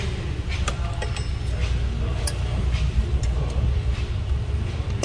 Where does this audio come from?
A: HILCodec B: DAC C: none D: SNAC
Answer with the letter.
C